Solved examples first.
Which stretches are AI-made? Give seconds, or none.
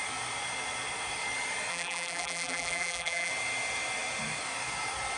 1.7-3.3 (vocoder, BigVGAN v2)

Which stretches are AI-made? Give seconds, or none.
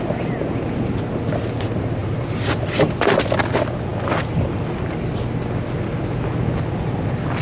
none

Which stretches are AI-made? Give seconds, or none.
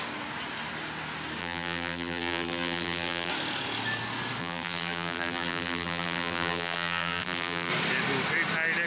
1.4-3.3 (vocoder, BigVGAN v2); 4.4-7.7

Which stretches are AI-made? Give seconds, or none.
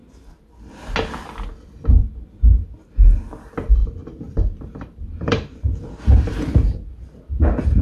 3.8-6.4 (vocoder, BigVGAN v2); 6.9-7.8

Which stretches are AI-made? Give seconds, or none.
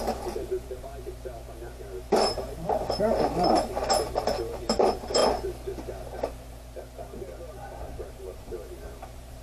0.0-0.9 (vocoder, BigVGAN v2); 2.3-5.2; 8.1-9.4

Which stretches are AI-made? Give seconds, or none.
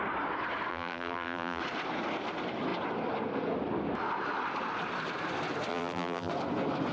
0.7-1.6 (vocoder, BigVGAN v2); 5.7-6.3